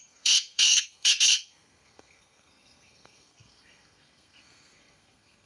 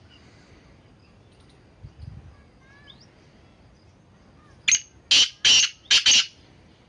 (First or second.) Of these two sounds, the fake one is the first